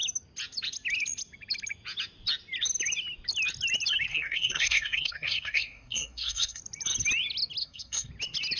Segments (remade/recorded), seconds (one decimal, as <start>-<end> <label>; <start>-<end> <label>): 0.0-4.1 recorded; 4.1-6.6 remade; 6.6-7.6 recorded; 7.6-8.1 remade; 8.1-8.6 recorded